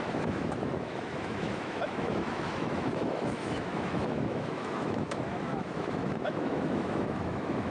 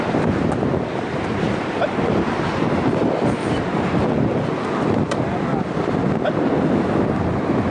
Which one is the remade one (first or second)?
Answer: first